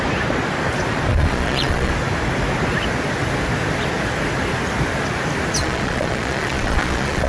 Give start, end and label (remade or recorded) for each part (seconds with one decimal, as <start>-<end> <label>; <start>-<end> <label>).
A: 0.0-1.1 recorded; 1.1-1.9 remade; 1.9-5.6 recorded; 5.6-7.3 remade